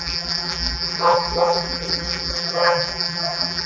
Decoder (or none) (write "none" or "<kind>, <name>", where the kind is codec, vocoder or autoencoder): vocoder, BigVGAN v2